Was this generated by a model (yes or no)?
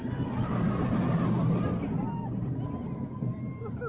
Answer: no